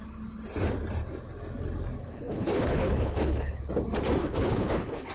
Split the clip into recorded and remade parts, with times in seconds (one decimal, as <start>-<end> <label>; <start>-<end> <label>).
0.0-2.0 recorded; 2.0-3.7 remade; 3.7-4.2 recorded; 4.2-5.1 remade